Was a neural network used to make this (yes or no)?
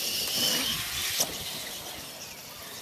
no